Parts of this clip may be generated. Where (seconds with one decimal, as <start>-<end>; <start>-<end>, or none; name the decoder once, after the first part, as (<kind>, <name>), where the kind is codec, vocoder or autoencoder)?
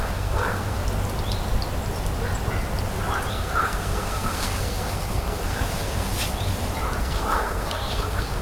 0.0-0.8 (codec, SNAC); 3.3-6.1; 7.0-8.4